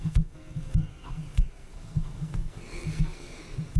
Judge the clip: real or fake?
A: fake